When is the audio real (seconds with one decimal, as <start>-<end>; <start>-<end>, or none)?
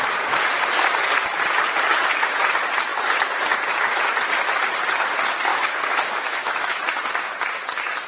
0.0-5.5; 6.8-8.1